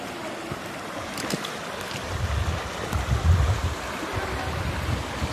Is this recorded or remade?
recorded